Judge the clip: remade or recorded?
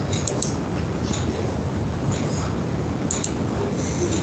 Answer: recorded